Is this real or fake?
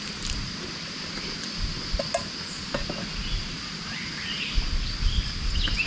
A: real